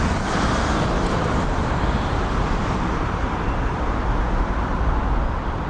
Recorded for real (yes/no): no